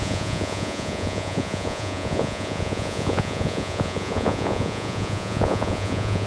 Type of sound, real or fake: fake